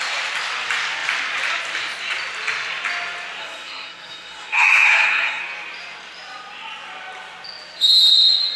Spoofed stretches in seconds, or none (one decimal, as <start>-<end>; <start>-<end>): 3.4-5.4